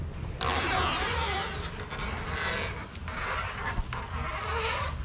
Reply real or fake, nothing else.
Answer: real